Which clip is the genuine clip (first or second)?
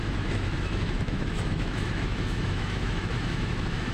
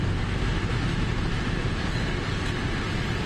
second